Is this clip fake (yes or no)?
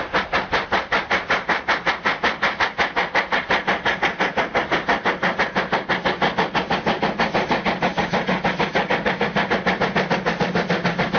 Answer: no